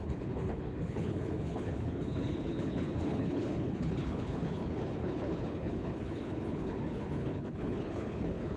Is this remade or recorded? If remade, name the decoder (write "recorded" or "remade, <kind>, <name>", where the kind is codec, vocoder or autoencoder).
remade, codec, HILCodec